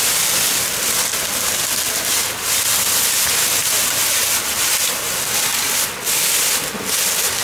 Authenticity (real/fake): real